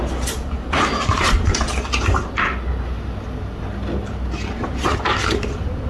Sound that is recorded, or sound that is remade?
recorded